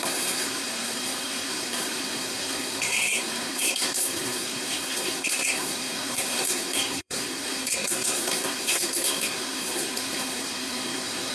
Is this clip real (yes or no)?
no